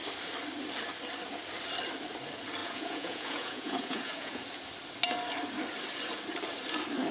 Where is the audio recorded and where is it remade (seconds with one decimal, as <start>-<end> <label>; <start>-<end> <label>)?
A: 0.0-2.6 recorded; 2.6-4.4 remade; 4.4-7.1 recorded